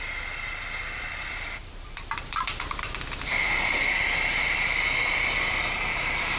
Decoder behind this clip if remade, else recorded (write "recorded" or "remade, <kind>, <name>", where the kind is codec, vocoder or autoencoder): remade, vocoder, BigVGAN v2